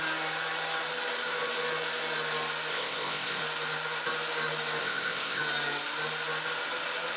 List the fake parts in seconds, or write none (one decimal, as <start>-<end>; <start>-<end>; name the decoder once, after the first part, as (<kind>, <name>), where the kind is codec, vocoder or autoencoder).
2.7-3.4 (codec, ZipCodec); 4.8-5.4